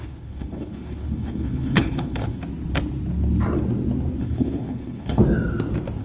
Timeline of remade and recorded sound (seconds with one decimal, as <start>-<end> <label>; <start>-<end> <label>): 0.0-2.4 remade; 2.4-4.2 recorded; 4.2-5.2 remade; 5.2-6.0 recorded